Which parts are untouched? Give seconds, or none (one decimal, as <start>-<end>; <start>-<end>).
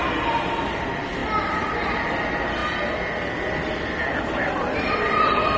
0.0-5.6